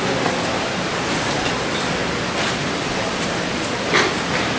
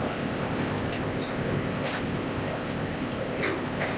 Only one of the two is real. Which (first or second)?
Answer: first